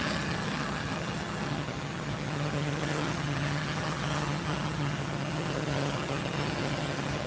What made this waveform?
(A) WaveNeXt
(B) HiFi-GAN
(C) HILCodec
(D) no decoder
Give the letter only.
B